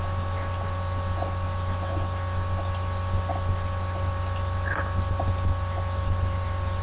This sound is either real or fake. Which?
real